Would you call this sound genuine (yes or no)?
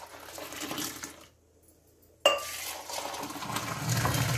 yes